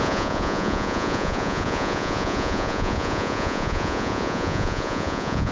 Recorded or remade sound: remade